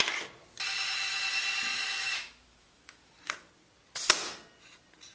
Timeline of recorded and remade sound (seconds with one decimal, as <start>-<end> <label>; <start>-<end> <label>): 0.0-1.7 recorded; 1.7-3.1 remade; 3.1-5.1 recorded